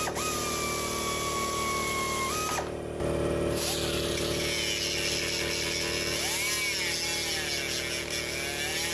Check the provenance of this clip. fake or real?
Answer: real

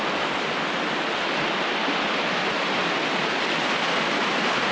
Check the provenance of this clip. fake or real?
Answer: real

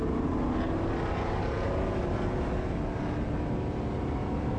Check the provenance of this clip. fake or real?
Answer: real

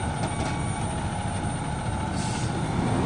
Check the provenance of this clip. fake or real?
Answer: real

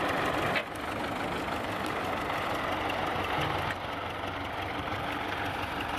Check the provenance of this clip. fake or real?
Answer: real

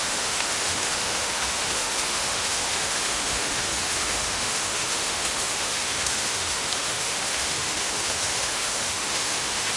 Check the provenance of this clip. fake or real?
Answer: fake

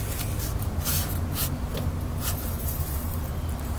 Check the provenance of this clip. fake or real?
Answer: real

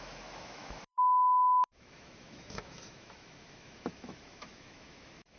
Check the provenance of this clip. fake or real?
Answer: fake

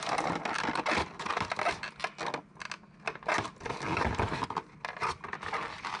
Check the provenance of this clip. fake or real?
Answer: real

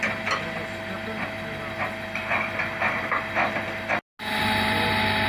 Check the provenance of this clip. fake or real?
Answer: real